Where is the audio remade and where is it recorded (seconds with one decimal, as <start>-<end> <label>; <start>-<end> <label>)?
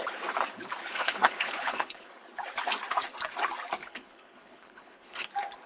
0.0-0.8 recorded; 0.8-2.1 remade; 2.1-3.8 recorded; 3.8-5.3 remade; 5.3-5.7 recorded